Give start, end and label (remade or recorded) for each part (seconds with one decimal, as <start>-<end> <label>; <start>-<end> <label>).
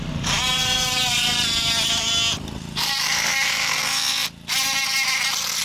0.0-3.8 remade; 3.8-5.6 recorded